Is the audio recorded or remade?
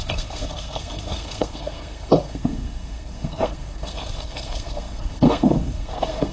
remade